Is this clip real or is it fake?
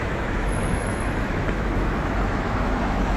fake